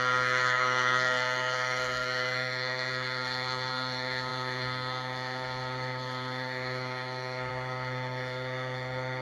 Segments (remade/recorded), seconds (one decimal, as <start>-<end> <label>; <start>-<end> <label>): 0.0-9.2 remade